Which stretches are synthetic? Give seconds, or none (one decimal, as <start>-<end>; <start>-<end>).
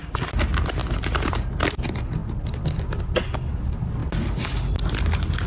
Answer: 0.8-1.5